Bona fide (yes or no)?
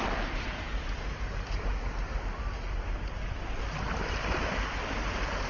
yes